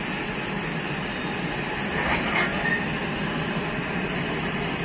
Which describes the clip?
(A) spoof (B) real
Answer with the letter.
B